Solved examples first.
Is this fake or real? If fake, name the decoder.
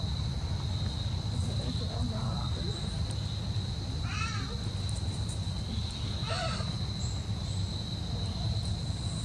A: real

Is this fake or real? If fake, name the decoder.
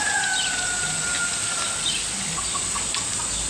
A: real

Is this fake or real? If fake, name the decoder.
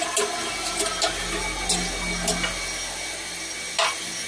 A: real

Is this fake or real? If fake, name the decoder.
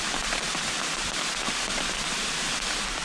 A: real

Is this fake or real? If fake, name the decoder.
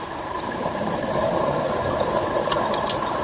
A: real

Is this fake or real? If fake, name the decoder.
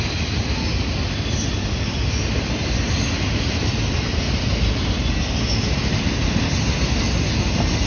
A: real